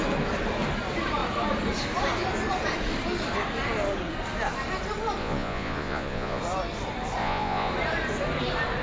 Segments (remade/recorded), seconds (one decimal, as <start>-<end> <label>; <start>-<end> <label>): 0.0-5.2 recorded; 5.2-6.4 remade; 6.4-7.2 recorded; 7.2-7.7 remade; 7.7-8.8 recorded